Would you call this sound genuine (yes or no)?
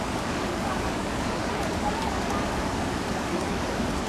no